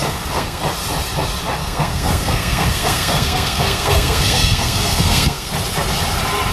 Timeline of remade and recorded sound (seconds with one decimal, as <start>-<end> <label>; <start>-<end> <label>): 0.0-0.6 remade; 0.6-1.6 recorded; 1.6-5.5 remade; 5.5-6.5 recorded